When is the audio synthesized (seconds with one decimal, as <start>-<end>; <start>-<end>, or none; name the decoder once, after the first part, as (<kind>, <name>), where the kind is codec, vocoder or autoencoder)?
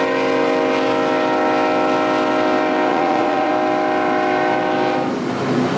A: 2.9-3.5 (vocoder, Vocos)